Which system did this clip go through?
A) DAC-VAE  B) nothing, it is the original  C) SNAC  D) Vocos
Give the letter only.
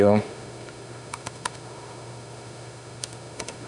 A